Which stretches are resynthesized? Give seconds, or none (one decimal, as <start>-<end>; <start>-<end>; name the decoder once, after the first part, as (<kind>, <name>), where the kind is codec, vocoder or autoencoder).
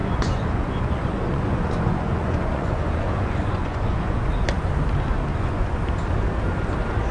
0.0-4.3 (vocoder, Vocos); 5.3-5.8